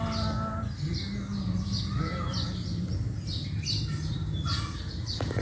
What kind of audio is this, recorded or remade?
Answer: recorded